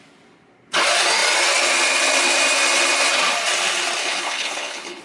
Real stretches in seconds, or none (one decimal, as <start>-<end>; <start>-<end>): 0.0-4.0